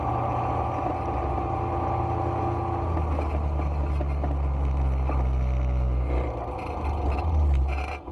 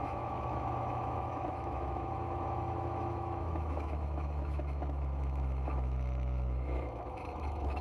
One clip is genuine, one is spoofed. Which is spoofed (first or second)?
second